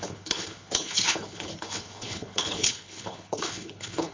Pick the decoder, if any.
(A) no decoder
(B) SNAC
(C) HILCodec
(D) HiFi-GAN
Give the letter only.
C